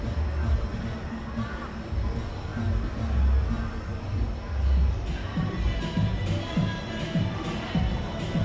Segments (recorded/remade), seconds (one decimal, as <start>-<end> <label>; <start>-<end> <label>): 0.0-8.4 recorded